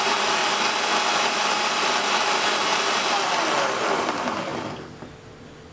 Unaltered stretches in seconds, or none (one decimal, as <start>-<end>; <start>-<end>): 0.0-5.7